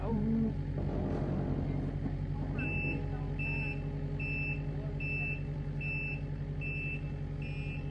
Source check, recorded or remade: recorded